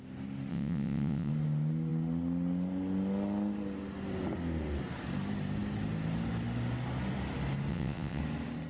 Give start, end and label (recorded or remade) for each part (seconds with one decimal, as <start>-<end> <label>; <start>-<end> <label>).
0.0-0.5 recorded; 0.5-1.3 remade; 1.3-7.7 recorded; 7.7-8.2 remade; 8.2-8.7 recorded